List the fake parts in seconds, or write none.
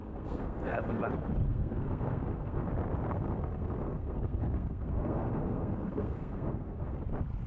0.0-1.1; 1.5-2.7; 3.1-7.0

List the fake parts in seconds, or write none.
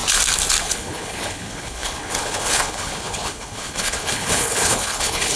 0.6-5.4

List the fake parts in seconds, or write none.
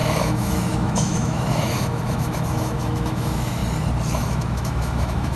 0.0-3.6; 4.2-5.4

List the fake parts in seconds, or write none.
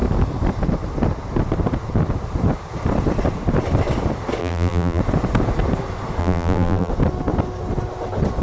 4.4-5.0; 6.2-6.9